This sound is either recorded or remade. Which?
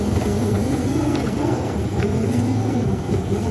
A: remade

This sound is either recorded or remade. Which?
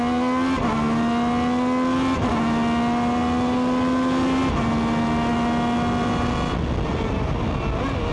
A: recorded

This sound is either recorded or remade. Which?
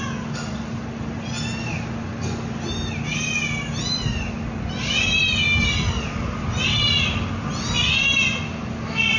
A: recorded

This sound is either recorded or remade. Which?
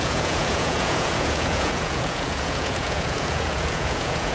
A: remade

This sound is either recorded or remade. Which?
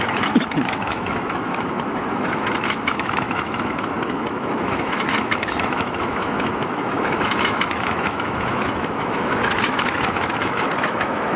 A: remade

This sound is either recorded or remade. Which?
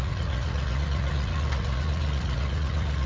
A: remade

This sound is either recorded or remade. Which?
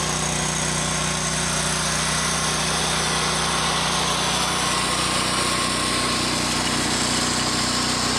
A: recorded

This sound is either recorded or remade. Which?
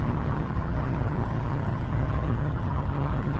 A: remade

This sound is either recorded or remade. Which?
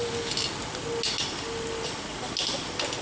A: recorded